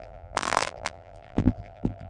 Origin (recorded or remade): remade